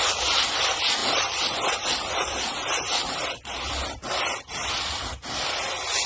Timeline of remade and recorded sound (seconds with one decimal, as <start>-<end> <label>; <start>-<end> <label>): 0.0-6.1 recorded